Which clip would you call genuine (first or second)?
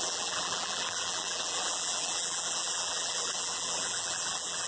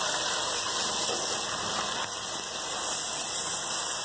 second